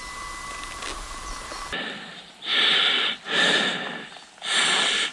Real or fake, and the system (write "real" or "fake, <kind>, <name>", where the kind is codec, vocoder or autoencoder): real